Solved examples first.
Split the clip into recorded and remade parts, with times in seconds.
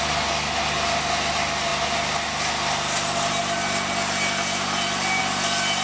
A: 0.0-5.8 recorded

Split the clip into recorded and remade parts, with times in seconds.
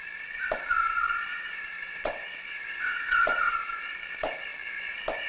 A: 0.0-1.3 recorded; 1.3-3.5 remade; 3.5-5.3 recorded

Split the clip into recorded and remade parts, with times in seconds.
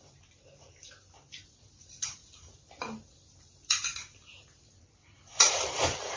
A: 0.0-2.2 remade; 2.2-3.4 recorded; 3.4-3.9 remade; 3.9-5.0 recorded; 5.0-6.2 remade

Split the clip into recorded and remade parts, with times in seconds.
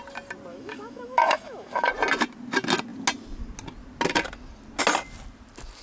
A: 0.0-0.5 recorded; 0.5-1.9 remade; 1.9-5.8 recorded